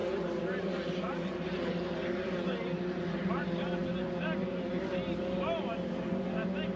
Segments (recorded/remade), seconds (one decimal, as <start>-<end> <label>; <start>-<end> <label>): 0.0-6.8 recorded